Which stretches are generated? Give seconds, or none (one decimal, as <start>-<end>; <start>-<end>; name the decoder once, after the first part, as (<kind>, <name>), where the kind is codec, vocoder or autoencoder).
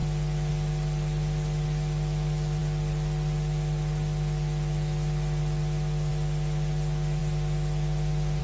none